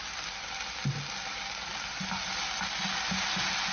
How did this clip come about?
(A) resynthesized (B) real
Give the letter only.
B